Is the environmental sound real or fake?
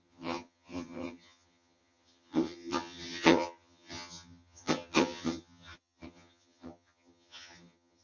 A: fake